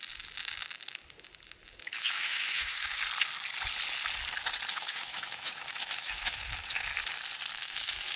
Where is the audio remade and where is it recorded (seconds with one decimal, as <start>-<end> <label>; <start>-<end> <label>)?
0.0-1.8 recorded; 1.8-3.0 remade; 3.0-4.7 recorded; 4.7-6.9 remade; 6.9-7.5 recorded; 7.5-8.2 remade